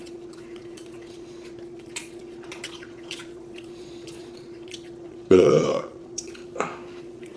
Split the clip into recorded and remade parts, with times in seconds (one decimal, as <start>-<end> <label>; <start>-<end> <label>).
0.0-6.4 remade; 6.4-7.0 recorded; 7.0-7.4 remade

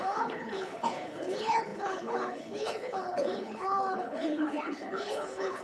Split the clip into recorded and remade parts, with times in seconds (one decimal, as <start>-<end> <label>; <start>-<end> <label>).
0.0-5.6 remade

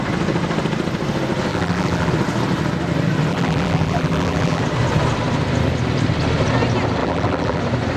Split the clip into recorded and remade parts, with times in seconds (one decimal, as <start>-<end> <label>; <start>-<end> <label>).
0.0-1.5 recorded; 1.5-2.1 remade; 2.1-3.3 recorded; 3.3-4.6 remade; 4.6-7.0 recorded; 7.0-7.6 remade; 7.6-8.0 recorded

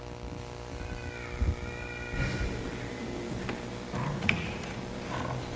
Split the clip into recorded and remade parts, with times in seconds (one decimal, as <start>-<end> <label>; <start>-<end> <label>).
0.0-4.1 recorded; 4.1-4.8 remade; 4.8-5.6 recorded

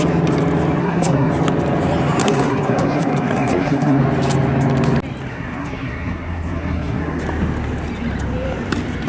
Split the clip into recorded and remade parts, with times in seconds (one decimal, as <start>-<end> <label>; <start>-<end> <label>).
0.0-0.8 recorded; 0.8-1.3 remade; 1.3-2.2 recorded; 2.2-4.0 remade; 4.0-5.3 recorded; 5.3-7.2 remade; 7.2-9.1 recorded

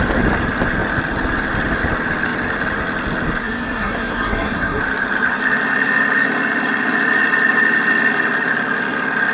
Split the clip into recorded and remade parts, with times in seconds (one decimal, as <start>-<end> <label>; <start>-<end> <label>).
0.0-3.4 recorded; 3.4-4.8 remade; 4.8-9.3 recorded

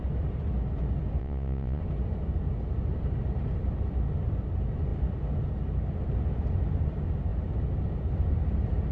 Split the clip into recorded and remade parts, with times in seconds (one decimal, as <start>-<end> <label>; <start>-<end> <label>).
0.0-1.2 recorded; 1.2-1.8 remade; 1.8-8.9 recorded